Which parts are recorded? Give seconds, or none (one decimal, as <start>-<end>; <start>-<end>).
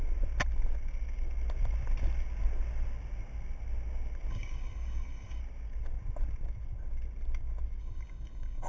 0.0-4.3; 5.4-7.8